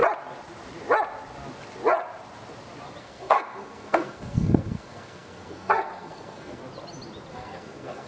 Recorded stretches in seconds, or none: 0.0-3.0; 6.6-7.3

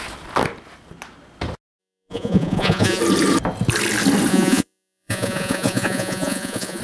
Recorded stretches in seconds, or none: 0.0-1.8; 3.0-4.3

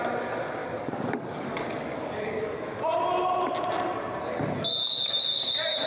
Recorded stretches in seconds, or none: 0.0-0.6; 2.8-4.8; 5.5-5.9

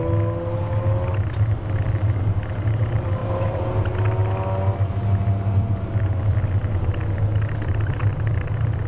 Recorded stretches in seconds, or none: 0.0-3.2; 3.8-8.9

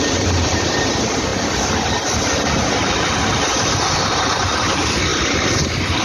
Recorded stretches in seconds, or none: 1.3-4.1; 5.1-6.0

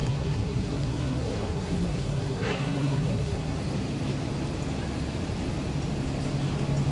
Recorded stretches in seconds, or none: 3.6-6.9

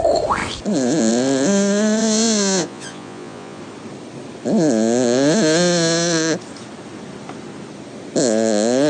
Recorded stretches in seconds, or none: 0.0-2.0; 3.6-8.9

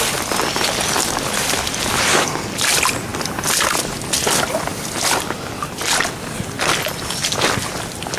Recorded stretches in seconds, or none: 0.0-8.2